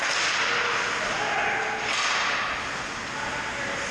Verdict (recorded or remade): recorded